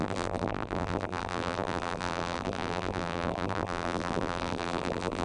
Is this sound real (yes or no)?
no